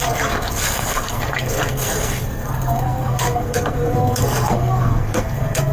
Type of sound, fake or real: fake